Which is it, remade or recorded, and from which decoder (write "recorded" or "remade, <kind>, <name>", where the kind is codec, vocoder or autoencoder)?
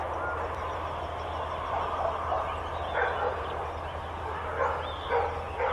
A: recorded